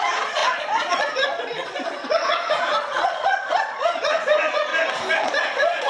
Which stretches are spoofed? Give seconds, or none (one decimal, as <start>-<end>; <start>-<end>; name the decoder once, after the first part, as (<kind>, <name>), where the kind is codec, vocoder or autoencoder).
0.0-4.7 (vocoder, Vocos); 5.2-5.9